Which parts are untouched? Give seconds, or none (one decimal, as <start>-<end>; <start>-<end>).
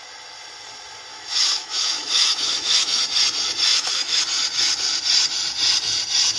0.0-1.1; 3.0-3.7; 4.2-6.4